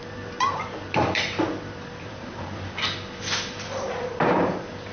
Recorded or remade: remade